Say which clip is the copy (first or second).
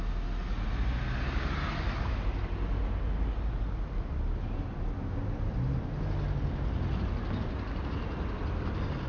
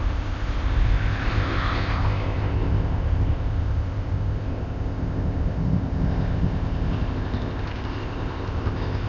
second